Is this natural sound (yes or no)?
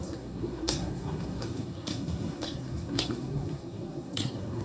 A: no